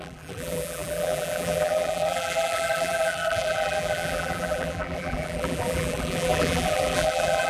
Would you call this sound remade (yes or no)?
yes